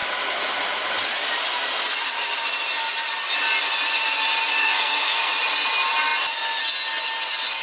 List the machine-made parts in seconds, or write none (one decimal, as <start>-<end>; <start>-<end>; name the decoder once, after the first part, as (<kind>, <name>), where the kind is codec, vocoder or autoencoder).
4.6-5.3 (codec, SNAC)